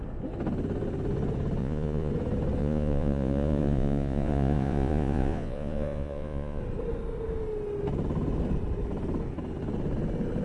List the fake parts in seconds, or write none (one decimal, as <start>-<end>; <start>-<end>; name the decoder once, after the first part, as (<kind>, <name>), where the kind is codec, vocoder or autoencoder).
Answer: 1.6-2.1 (vocoder, Vocos); 2.6-6.6